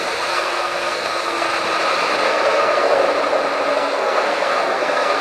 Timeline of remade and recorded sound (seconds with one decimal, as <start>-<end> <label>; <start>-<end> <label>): 0.0-1.5 remade; 1.5-2.2 recorded; 2.2-3.0 remade; 3.0-3.7 recorded; 3.7-5.2 remade